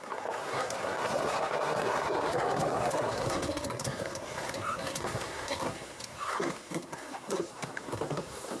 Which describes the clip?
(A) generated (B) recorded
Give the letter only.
A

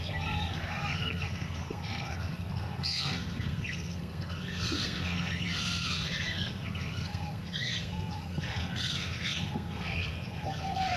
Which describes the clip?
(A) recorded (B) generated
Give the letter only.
B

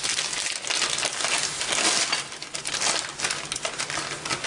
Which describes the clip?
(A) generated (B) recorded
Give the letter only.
B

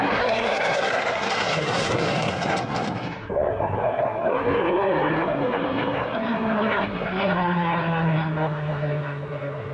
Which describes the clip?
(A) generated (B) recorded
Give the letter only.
A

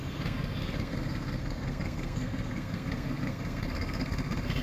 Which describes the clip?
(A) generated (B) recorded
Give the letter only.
A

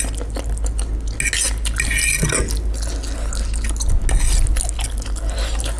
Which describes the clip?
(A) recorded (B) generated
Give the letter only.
A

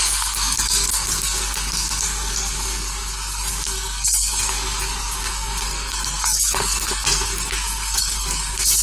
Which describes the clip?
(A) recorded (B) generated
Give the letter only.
B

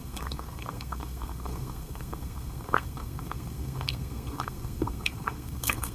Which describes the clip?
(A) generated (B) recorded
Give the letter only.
A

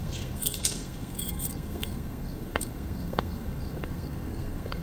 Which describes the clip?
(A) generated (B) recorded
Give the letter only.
A